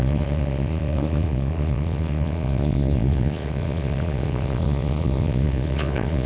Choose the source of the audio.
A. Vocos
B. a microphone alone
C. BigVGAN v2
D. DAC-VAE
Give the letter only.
A